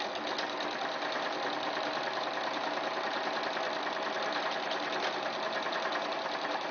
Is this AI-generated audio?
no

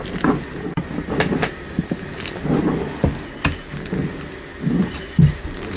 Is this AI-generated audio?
no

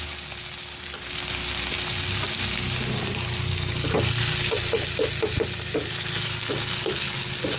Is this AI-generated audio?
no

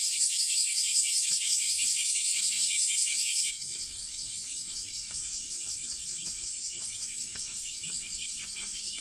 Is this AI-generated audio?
yes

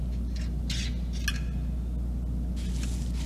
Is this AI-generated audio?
no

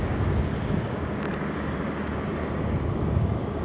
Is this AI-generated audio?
yes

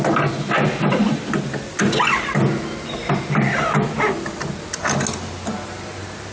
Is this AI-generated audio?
no